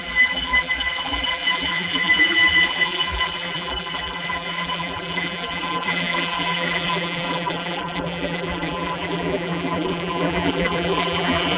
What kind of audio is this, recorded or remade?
remade